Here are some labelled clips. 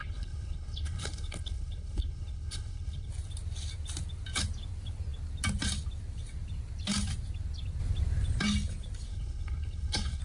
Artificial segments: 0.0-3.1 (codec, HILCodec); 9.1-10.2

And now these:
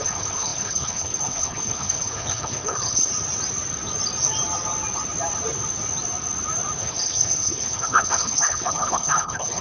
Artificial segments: 0.0-3.1 (codec, HILCodec); 6.8-9.6

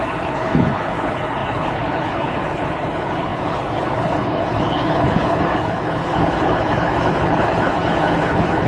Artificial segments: 0.0-8.7 (codec, HILCodec)